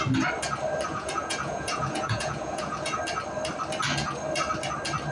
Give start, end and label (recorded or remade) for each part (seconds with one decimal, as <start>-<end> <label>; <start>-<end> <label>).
0.0-0.9 recorded; 0.9-3.0 remade; 3.0-5.1 recorded